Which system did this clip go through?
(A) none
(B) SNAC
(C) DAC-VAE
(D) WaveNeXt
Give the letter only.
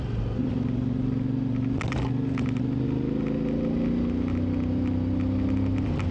A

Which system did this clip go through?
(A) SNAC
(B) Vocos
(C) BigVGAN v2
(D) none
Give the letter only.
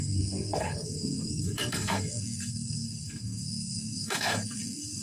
A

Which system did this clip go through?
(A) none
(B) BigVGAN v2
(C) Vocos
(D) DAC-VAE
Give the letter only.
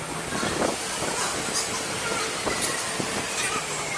A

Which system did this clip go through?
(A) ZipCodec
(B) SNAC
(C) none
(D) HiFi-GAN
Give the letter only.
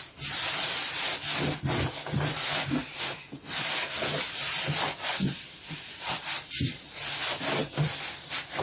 C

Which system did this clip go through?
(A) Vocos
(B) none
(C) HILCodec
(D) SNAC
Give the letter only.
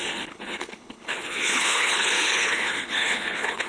C